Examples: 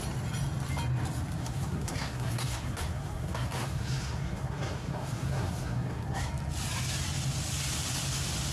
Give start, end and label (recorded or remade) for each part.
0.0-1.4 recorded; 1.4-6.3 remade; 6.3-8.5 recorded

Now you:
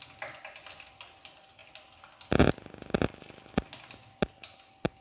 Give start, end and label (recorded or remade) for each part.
0.0-5.0 recorded

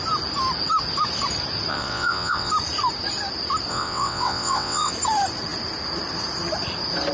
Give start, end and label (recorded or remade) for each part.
0.0-1.7 recorded; 1.7-2.5 remade; 2.5-3.7 recorded; 3.7-4.9 remade; 4.9-7.1 recorded

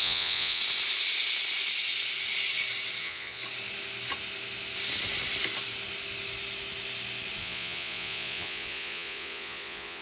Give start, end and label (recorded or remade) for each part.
0.0-0.6 remade; 0.6-3.0 recorded; 3.0-3.4 remade; 3.4-7.4 recorded; 7.4-10.0 remade